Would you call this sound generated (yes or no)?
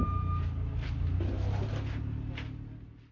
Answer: no